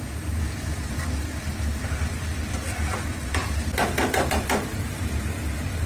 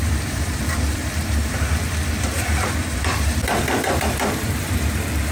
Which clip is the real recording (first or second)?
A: first